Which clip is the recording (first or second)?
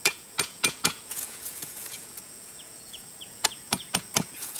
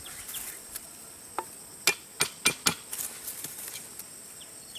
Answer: second